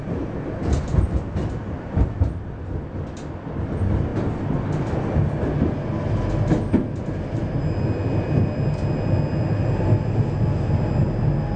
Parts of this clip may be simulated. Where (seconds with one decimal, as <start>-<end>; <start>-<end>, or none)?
none